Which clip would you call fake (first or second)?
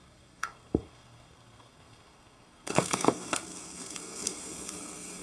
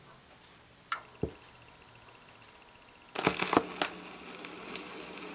first